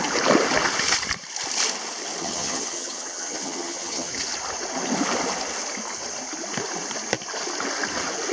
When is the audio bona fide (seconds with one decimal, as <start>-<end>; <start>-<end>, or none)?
0.0-2.2; 4.1-8.3